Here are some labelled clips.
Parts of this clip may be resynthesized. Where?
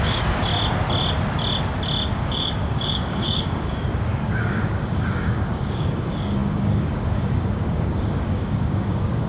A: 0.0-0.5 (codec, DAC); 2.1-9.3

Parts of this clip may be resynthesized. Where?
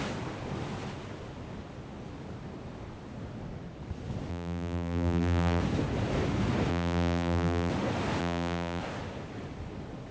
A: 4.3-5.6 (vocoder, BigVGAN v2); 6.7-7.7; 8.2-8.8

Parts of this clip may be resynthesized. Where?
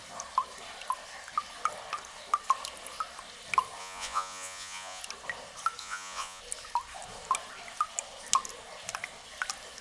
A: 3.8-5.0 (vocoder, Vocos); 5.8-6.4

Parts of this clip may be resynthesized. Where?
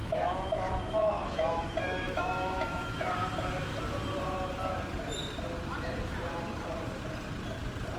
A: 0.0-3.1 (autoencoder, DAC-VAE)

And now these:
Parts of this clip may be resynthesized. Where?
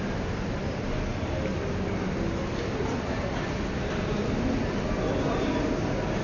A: none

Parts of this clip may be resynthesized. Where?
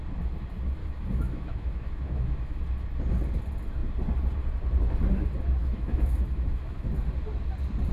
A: 0.8-2.6 (autoencoder, DAC-VAE); 5.6-6.9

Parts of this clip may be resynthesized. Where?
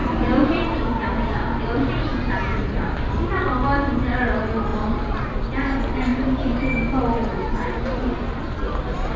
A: 4.7-5.4 (vocoder, BigVGAN v2)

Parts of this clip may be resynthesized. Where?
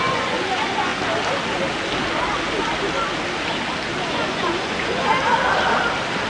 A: 0.0-0.9 (vocoder, Vocos); 4.1-5.1